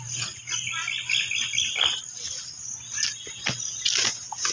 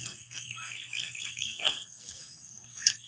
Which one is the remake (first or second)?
second